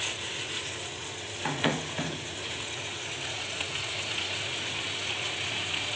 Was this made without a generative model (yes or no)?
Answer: no